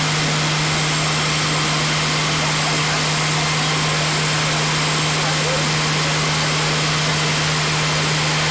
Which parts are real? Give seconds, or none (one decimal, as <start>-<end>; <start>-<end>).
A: 0.0-8.5